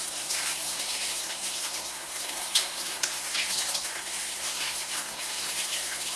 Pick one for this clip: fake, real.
fake